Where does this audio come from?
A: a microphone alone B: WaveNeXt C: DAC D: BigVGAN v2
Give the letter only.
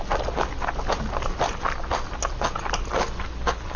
A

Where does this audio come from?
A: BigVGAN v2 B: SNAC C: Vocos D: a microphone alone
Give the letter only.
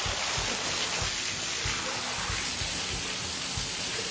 D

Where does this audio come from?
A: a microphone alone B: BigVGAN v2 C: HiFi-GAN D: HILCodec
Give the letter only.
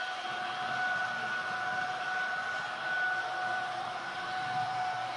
B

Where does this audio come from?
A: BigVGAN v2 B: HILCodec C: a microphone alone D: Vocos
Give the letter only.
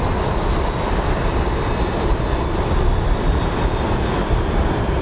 A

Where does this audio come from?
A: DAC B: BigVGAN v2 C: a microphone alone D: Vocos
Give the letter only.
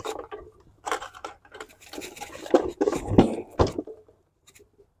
B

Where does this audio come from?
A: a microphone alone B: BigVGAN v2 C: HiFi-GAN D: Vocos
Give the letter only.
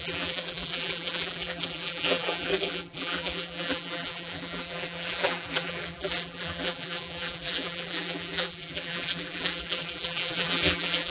B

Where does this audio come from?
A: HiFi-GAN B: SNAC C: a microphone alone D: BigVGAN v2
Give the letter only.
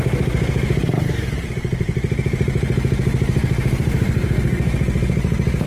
D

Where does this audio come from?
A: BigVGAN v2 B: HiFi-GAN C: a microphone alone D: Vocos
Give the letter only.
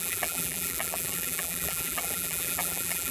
A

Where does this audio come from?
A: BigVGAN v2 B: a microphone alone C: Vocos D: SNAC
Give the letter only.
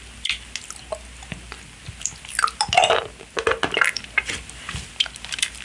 B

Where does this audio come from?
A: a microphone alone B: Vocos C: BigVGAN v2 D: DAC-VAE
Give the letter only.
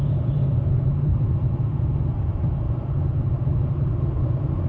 C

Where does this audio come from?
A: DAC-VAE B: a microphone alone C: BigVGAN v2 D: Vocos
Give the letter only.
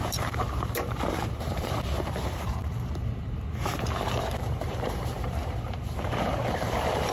C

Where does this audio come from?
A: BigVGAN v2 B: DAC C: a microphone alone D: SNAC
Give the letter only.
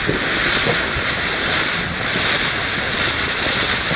C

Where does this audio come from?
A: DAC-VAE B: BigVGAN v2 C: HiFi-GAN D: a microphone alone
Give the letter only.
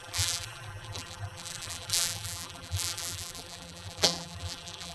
B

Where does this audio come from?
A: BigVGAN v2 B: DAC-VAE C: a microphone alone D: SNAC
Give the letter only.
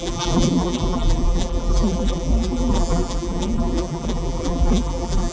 A